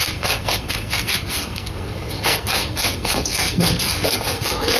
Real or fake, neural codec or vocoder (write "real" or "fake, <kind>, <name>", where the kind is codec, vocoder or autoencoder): fake, codec, SNAC